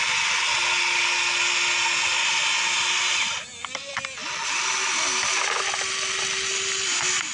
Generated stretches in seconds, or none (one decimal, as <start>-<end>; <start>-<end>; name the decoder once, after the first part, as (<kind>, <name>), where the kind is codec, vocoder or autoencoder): none